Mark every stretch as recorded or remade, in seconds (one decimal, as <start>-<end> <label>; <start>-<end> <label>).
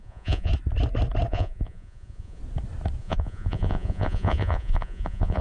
0.0-0.5 remade; 0.5-1.3 recorded; 1.3-2.4 remade; 2.4-3.0 recorded; 3.0-5.4 remade